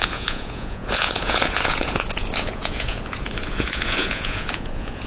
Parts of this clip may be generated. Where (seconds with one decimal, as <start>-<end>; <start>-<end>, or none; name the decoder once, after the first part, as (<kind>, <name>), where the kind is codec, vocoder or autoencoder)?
0.0-5.1 (vocoder, Vocos)